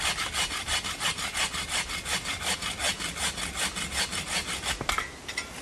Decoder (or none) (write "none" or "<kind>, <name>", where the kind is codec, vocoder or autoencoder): none